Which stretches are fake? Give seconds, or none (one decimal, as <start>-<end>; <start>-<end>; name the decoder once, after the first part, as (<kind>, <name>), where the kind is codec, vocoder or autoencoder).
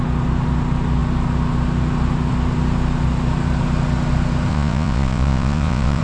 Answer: 4.5-6.0 (vocoder, Vocos)